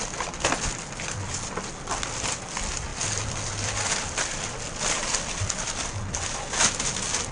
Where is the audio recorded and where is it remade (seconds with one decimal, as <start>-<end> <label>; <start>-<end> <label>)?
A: 0.0-7.3 recorded